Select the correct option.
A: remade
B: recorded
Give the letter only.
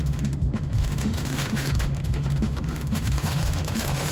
A